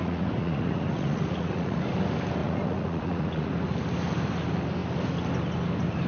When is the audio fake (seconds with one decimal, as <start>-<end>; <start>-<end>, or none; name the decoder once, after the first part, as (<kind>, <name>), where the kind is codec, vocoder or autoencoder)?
0.0-1.8 (vocoder, Vocos); 2.4-3.5